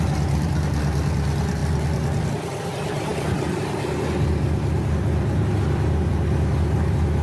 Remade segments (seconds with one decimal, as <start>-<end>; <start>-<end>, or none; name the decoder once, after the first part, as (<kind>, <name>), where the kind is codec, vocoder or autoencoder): none